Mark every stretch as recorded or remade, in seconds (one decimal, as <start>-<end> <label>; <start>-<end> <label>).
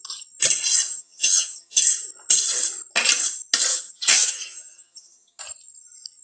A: 0.0-0.9 recorded; 0.9-1.8 remade; 1.8-3.7 recorded; 3.7-5.4 remade; 5.4-6.2 recorded